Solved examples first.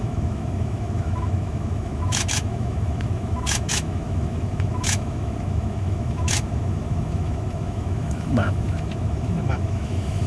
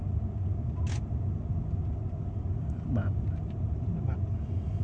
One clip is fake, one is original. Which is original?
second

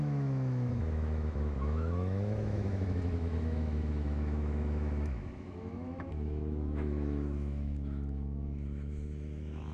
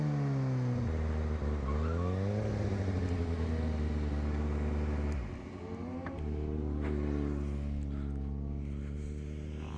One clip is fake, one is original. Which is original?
second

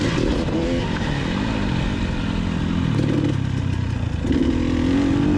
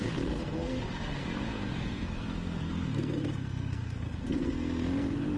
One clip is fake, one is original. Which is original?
first